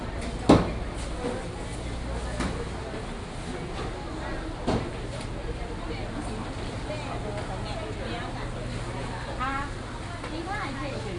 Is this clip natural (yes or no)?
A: yes